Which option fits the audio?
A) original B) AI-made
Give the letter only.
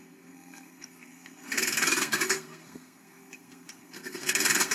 B